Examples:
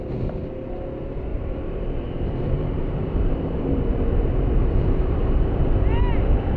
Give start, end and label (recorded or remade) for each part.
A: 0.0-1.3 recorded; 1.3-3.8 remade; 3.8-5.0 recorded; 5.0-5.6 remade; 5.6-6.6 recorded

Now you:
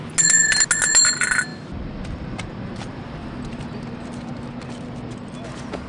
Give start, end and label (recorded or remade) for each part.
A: 0.0-1.5 recorded; 1.5-3.6 remade; 3.6-5.9 recorded

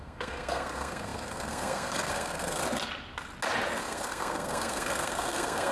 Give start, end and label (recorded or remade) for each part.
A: 0.0-2.6 remade; 2.6-3.8 recorded; 3.8-5.7 remade

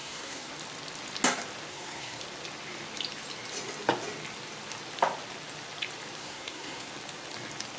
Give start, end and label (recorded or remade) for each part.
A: 0.0-0.5 remade; 0.5-1.7 recorded; 1.7-2.2 remade; 2.2-6.2 recorded; 6.2-6.9 remade; 6.9-7.8 recorded

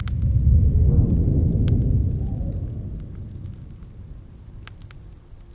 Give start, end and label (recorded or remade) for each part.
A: 0.0-5.5 recorded

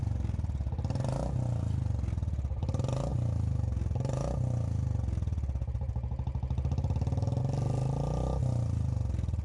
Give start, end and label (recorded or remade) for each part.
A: 0.0-9.4 recorded

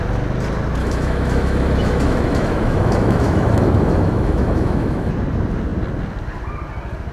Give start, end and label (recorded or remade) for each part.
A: 0.0-0.8 recorded; 0.8-5.1 remade; 5.1-7.1 recorded

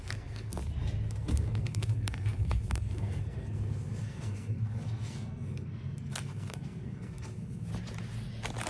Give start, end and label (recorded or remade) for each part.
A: 0.0-0.6 remade; 0.6-1.1 recorded; 1.1-7.7 remade; 7.7-8.7 recorded